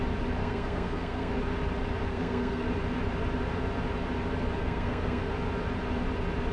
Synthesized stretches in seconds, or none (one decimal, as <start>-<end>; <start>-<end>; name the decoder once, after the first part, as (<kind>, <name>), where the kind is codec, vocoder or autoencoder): 0.4-1.3 (codec, SNAC); 2.1-2.7; 4.6-5.3

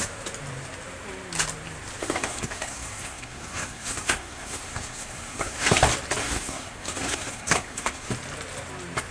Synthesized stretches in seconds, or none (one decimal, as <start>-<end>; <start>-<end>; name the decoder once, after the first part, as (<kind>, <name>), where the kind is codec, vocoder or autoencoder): 2.0-5.8 (codec, SNAC); 6.2-8.1

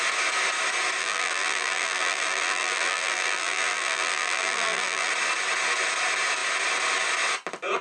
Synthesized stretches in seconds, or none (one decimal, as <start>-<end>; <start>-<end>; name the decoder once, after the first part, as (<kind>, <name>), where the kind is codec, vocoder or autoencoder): 1.0-5.1 (vocoder, BigVGAN v2)

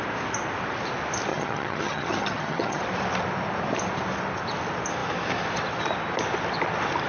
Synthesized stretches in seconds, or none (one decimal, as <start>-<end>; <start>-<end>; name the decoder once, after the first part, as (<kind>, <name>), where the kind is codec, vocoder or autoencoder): 1.3-2.8 (vocoder, HiFi-GAN)

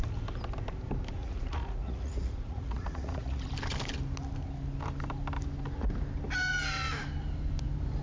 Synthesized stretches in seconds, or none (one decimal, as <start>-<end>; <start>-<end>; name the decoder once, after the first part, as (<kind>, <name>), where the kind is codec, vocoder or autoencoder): 1.2-3.5 (vocoder, Vocos)

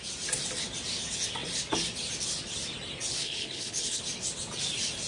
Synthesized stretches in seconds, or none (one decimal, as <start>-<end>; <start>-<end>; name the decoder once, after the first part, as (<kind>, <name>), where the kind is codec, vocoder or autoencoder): 3.2-4.0 (codec, HILCodec)